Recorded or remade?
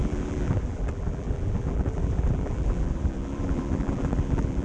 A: remade